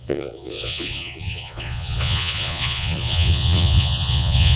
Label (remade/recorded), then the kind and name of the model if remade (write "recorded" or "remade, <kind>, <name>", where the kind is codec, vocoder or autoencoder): remade, vocoder, Vocos